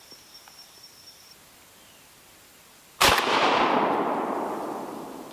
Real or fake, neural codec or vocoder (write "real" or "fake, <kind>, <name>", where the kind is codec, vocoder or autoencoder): real